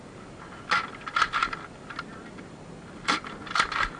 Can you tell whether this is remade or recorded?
recorded